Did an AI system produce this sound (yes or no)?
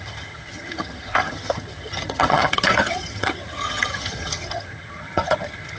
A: yes